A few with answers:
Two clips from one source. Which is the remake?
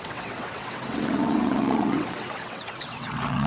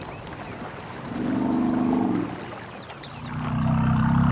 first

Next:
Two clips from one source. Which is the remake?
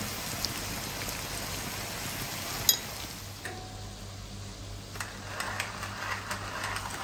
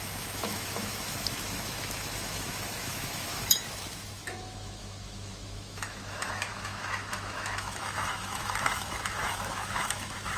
second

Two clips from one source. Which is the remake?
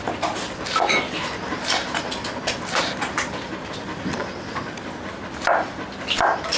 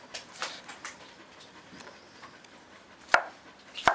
second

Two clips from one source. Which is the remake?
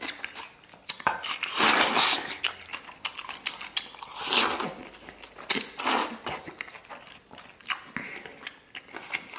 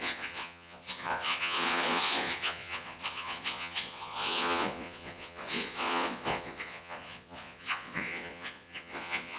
second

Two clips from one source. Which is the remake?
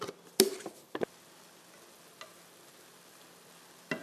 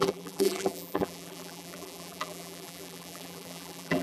second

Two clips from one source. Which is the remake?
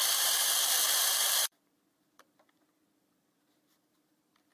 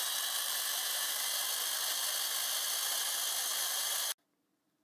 first